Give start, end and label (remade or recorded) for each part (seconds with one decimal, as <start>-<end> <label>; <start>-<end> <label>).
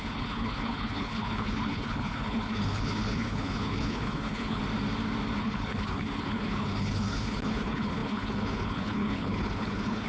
0.0-4.6 remade; 4.6-5.4 recorded; 5.4-10.1 remade